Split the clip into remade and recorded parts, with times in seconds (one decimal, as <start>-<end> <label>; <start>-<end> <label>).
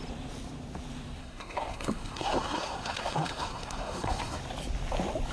0.0-1.2 recorded; 1.2-4.4 remade; 4.4-5.3 recorded